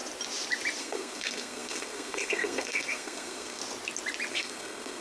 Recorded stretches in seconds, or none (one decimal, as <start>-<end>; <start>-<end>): 0.0-0.8; 3.6-4.3